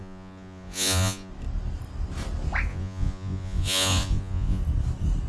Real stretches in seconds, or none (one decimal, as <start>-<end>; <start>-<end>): 1.3-2.7; 4.6-5.3